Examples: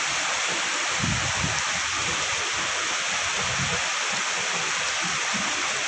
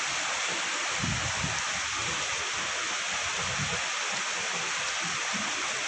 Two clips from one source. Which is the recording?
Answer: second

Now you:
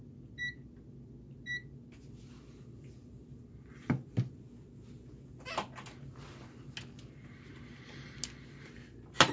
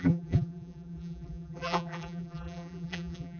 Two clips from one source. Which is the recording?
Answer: first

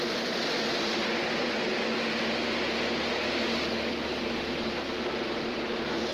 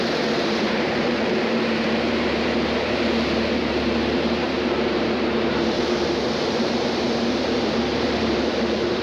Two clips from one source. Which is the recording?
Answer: first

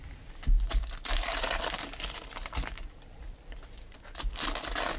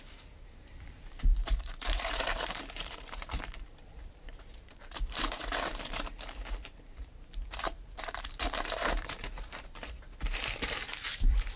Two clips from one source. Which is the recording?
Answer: first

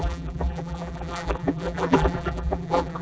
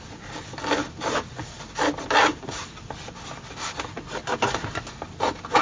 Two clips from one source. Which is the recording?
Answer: second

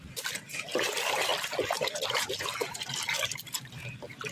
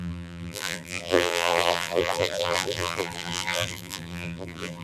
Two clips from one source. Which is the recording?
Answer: first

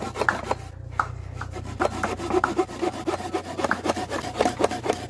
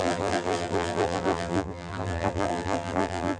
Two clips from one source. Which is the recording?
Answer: first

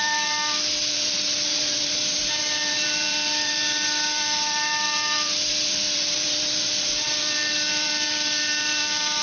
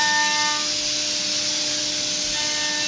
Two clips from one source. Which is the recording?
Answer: second